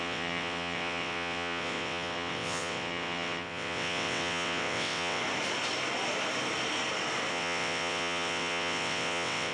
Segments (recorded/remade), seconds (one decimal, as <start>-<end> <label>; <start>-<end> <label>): 0.0-5.2 remade; 5.2-7.3 recorded; 7.3-9.5 remade